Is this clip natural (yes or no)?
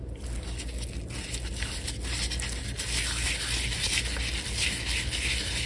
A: yes